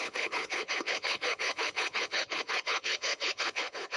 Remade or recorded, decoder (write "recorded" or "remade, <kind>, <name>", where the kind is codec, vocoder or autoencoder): remade, codec, HILCodec